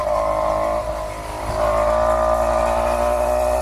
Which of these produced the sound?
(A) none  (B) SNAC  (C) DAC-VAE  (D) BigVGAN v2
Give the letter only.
A